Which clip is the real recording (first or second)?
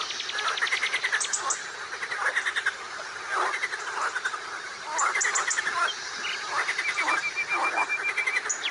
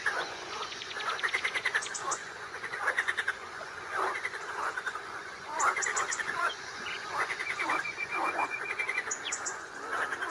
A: first